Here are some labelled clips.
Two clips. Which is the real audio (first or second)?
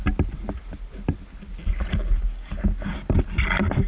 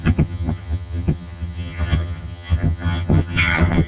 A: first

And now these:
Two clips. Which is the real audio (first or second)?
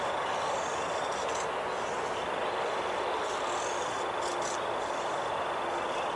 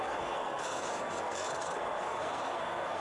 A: first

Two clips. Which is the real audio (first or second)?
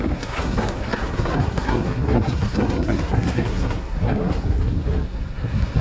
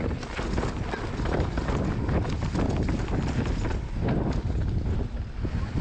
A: second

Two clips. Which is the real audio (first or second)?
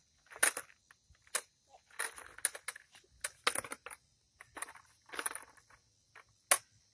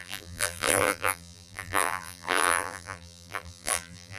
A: first